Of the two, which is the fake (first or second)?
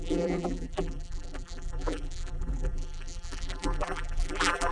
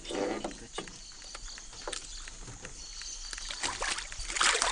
first